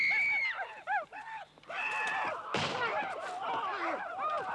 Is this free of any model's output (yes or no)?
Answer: yes